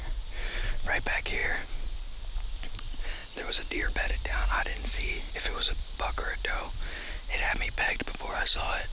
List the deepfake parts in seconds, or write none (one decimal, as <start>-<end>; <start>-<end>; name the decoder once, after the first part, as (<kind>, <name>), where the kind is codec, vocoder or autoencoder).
none